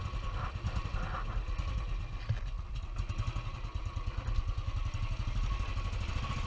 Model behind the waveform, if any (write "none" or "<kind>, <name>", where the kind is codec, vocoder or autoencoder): none